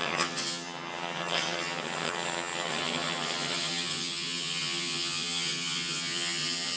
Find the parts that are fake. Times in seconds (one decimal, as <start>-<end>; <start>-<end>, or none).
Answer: 0.0-6.8